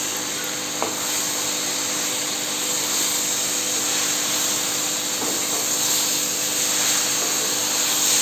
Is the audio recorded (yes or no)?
yes